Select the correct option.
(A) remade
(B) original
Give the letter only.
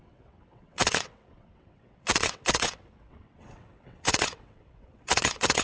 A